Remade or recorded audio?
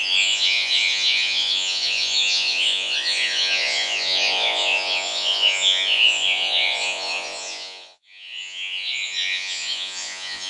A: remade